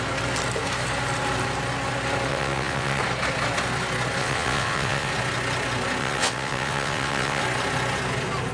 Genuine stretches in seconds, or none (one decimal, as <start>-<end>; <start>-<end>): 0.0-2.3; 3.0-4.2; 5.1-6.0; 7.4-8.5